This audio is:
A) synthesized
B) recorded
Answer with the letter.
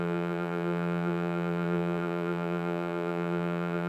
A